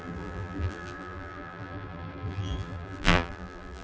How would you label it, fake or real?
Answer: fake